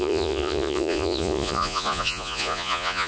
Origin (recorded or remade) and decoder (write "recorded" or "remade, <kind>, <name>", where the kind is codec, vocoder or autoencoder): remade, vocoder, Vocos